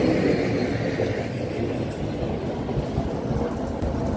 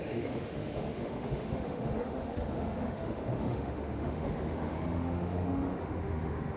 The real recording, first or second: first